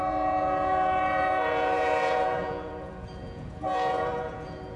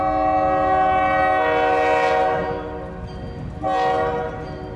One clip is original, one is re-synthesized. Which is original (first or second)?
second